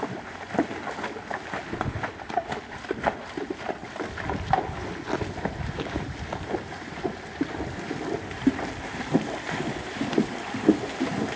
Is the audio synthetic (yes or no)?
no